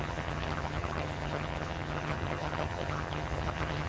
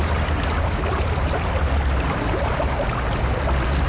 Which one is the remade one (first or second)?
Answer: first